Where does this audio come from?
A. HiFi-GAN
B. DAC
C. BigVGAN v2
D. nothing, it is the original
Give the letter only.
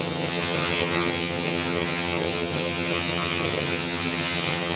A